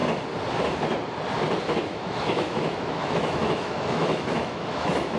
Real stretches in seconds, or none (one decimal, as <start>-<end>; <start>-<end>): 0.0-1.9